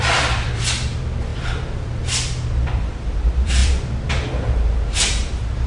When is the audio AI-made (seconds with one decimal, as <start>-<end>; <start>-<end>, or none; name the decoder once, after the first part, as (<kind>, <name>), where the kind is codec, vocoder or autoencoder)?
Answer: 0.0-5.7 (vocoder, BigVGAN v2)